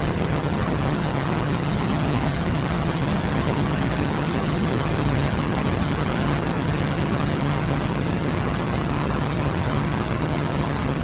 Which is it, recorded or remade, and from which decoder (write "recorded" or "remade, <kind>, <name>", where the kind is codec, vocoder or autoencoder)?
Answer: remade, vocoder, HiFi-GAN